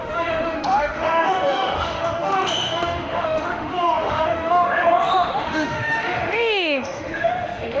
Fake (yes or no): yes